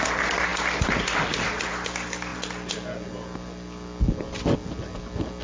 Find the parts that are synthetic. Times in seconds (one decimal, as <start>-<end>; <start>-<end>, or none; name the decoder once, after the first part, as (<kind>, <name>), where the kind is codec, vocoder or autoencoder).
none